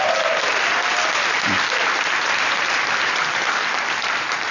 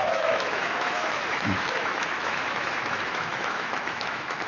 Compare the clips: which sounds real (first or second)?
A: first